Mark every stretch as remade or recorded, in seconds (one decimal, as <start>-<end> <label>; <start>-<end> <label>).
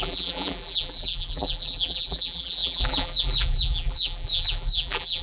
0.0-5.2 remade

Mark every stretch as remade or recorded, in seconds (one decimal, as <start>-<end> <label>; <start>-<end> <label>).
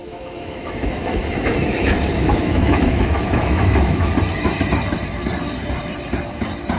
0.0-4.1 remade; 4.1-6.8 recorded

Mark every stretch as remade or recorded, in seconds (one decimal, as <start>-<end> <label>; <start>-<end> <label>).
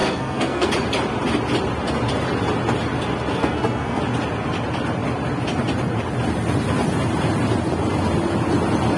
0.0-0.7 remade; 0.7-3.4 recorded; 3.4-4.0 remade; 4.0-9.0 recorded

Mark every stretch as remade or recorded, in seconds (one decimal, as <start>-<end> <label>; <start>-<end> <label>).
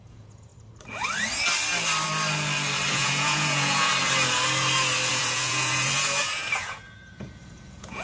0.0-0.5 remade; 0.5-2.9 recorded; 2.9-3.9 remade; 3.9-5.1 recorded; 5.1-8.0 remade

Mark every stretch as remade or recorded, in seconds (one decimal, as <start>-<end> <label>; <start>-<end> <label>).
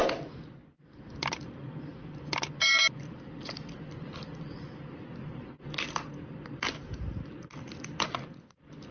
0.0-8.9 recorded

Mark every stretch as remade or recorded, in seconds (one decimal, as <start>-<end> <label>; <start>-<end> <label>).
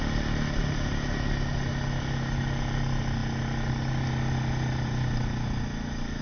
0.0-6.2 recorded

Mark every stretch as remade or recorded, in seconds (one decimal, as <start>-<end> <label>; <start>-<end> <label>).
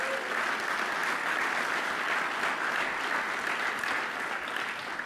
0.0-5.1 recorded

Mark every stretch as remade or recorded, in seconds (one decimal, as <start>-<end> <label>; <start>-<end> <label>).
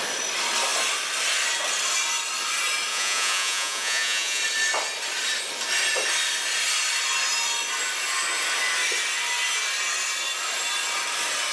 0.0-2.9 recorded; 2.9-4.4 remade; 4.4-11.5 recorded